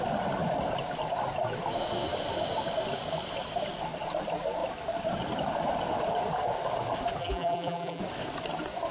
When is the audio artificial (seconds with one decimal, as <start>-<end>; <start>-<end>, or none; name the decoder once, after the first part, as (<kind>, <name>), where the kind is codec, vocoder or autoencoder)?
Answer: 7.2-8.0 (vocoder, BigVGAN v2)

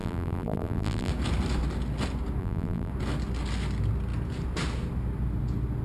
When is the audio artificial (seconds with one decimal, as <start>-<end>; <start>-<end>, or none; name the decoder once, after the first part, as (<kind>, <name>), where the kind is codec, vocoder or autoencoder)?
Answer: 0.0-1.1 (vocoder, BigVGAN v2); 2.4-2.9

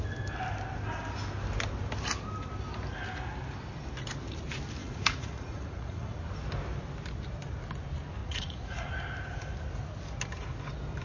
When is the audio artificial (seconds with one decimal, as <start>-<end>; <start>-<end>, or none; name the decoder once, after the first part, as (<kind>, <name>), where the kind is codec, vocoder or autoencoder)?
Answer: 4.8-6.2 (vocoder, Vocos); 8.2-8.9